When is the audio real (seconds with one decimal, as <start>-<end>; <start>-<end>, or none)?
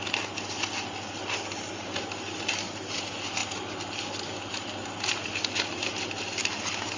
0.0-7.0